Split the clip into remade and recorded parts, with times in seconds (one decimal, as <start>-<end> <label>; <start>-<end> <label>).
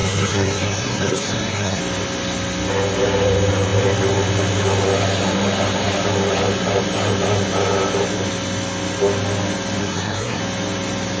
0.0-1.8 remade; 1.8-9.8 recorded; 9.8-10.4 remade; 10.4-11.2 recorded